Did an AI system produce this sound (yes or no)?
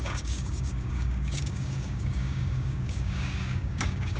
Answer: yes